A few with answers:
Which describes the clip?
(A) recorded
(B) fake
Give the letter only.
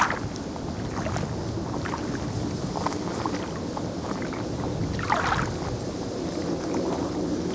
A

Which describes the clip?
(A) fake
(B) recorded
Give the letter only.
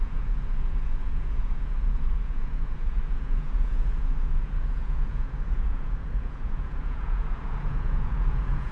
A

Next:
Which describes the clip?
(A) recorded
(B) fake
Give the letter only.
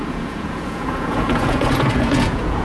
B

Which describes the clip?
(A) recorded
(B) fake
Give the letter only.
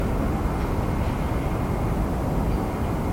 A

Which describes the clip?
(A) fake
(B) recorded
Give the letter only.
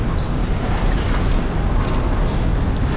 B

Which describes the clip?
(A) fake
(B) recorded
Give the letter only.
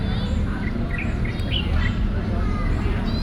B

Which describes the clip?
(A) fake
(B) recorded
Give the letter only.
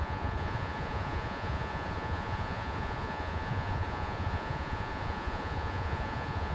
A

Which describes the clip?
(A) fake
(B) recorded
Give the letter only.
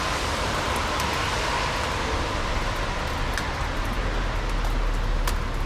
B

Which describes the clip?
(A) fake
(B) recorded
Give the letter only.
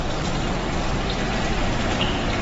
B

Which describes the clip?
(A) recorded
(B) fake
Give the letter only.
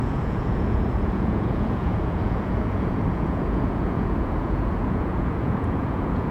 B